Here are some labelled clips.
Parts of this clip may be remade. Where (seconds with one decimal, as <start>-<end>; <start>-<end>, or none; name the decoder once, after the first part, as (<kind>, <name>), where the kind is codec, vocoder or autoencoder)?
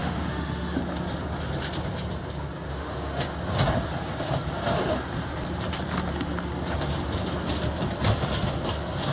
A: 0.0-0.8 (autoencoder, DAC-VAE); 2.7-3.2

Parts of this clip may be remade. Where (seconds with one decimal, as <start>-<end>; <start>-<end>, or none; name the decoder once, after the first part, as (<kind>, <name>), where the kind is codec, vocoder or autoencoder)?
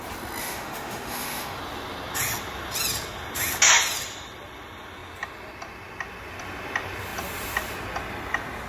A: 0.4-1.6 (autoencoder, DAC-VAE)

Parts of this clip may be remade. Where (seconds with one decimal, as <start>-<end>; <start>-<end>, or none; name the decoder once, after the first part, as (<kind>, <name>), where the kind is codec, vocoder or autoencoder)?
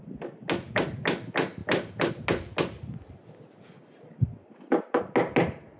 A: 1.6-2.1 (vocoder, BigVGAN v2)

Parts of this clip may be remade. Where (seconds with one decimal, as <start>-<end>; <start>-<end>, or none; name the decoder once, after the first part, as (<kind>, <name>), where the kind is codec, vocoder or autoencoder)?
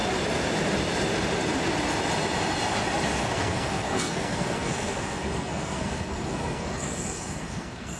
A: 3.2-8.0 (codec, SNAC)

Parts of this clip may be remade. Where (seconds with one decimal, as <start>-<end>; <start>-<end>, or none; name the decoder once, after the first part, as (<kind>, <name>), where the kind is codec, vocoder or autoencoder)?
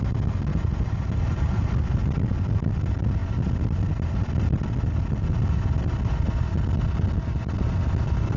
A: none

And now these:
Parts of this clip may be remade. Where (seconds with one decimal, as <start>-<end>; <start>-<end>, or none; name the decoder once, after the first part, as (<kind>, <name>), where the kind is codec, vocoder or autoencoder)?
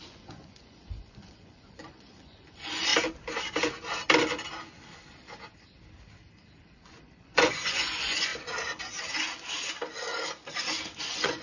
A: 0.0-2.9 (vocoder, Vocos); 6.6-8.3; 11.0-11.4